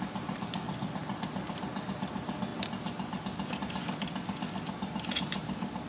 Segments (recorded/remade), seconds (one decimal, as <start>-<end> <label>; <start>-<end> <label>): 0.0-1.0 recorded; 1.0-1.8 remade; 1.8-5.9 recorded